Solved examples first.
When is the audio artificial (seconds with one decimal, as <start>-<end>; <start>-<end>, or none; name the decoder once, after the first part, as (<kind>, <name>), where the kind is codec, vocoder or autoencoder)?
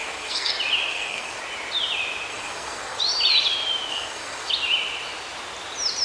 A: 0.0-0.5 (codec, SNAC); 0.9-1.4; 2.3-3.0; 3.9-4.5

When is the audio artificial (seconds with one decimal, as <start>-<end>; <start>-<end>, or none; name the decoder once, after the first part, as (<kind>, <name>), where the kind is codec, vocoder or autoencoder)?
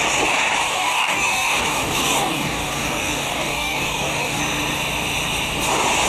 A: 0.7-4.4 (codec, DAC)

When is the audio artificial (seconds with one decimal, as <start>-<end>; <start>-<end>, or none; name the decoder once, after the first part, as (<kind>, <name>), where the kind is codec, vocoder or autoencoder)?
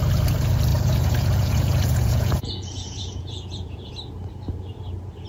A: 0.7-3.9 (vocoder, Vocos)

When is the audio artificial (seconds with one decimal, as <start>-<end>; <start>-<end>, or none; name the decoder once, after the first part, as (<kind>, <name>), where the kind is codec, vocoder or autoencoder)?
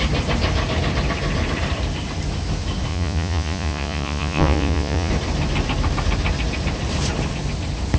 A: 2.9-5.1 (vocoder, Vocos)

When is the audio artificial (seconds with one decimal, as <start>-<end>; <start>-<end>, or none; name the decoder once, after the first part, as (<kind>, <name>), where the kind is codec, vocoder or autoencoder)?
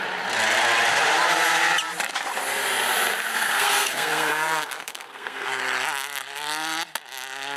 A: 3.3-5.6 (codec, SNAC)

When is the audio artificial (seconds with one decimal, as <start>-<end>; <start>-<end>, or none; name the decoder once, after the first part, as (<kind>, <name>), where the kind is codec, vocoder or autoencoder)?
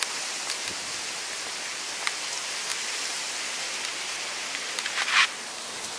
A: none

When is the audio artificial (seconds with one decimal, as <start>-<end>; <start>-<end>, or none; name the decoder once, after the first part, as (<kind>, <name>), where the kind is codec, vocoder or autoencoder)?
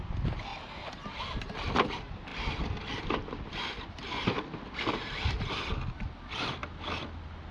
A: none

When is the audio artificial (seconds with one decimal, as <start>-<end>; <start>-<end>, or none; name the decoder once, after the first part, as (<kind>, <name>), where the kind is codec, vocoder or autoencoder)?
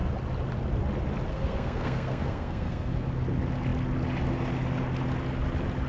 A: 1.3-2.9 (codec, SNAC)